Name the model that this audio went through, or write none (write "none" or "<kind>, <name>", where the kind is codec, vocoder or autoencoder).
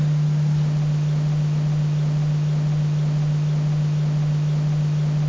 none